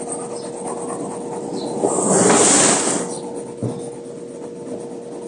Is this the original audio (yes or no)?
yes